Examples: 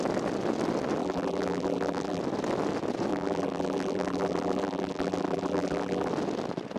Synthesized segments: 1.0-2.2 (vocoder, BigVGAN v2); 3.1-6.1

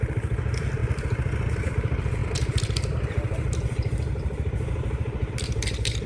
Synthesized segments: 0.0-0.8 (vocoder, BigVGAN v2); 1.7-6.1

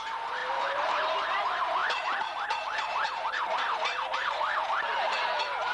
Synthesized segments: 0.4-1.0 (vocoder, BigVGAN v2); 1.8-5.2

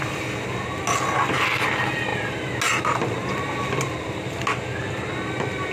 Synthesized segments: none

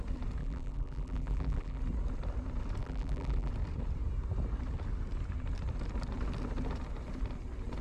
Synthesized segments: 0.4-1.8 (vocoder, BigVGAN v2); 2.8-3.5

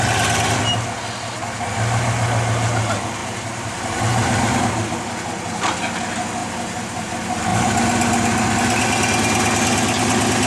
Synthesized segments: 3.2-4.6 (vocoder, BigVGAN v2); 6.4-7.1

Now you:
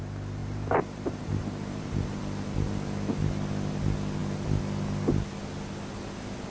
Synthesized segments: 0.4-2.2 (vocoder, BigVGAN v2)